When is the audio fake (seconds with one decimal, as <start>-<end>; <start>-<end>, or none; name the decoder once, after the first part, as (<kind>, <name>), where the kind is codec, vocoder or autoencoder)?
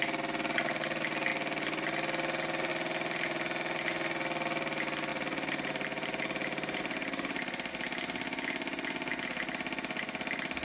5.1-7.7 (vocoder, BigVGAN v2)